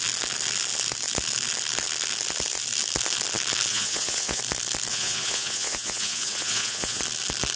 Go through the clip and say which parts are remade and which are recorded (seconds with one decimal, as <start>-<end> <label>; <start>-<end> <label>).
0.0-3.7 recorded; 3.7-4.4 remade; 4.4-4.9 recorded; 4.9-7.0 remade; 7.0-7.6 recorded